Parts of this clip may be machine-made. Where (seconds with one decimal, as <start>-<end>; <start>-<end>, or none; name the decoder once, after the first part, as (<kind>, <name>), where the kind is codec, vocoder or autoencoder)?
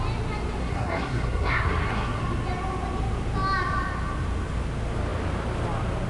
0.6-2.2 (codec, SNAC)